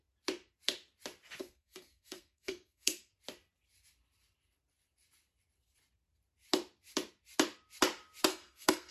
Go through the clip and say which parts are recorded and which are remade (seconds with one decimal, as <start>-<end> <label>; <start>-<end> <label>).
0.0-1.4 recorded; 1.4-3.1 remade; 3.1-8.3 recorded; 8.3-8.9 remade

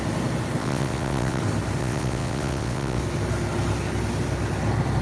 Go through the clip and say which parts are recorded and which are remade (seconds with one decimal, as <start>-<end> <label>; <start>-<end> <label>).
0.0-0.6 recorded; 0.6-1.4 remade; 1.4-1.8 recorded; 1.8-3.0 remade; 3.0-5.0 recorded

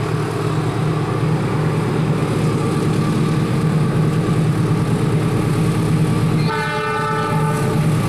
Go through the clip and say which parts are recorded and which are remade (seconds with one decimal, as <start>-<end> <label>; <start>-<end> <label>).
0.0-8.1 recorded

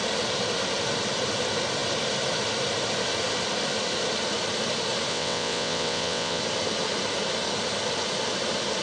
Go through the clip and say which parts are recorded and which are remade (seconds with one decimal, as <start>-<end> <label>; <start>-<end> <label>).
0.0-5.1 recorded; 5.1-6.4 remade; 6.4-8.8 recorded

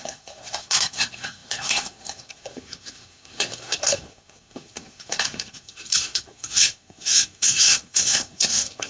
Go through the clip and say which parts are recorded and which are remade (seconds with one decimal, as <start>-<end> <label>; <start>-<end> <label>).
0.0-8.9 remade

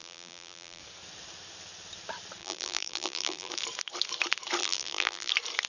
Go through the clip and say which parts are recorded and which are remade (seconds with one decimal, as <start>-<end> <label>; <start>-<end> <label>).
0.0-0.8 remade; 0.8-2.4 recorded; 2.4-3.5 remade; 3.5-4.6 recorded; 4.6-5.3 remade; 5.3-5.7 recorded

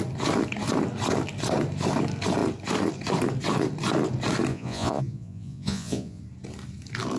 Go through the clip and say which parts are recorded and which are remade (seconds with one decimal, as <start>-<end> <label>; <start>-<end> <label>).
0.0-4.5 recorded; 4.5-6.2 remade; 6.2-7.2 recorded